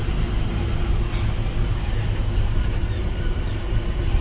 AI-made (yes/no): no